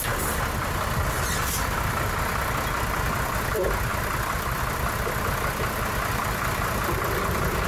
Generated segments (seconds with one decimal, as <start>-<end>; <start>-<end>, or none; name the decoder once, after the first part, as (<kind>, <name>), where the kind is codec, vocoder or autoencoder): none